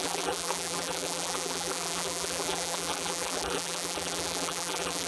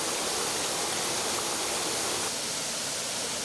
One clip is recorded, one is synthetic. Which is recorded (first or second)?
second